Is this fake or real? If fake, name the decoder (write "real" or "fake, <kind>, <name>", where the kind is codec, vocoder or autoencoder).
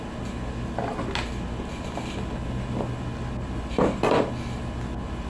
real